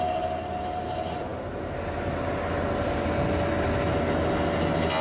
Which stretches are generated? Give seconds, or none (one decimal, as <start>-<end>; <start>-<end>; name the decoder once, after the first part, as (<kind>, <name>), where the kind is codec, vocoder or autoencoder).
none